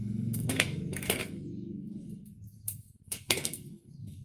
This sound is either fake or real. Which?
fake